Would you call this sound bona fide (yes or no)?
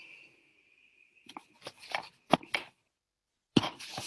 yes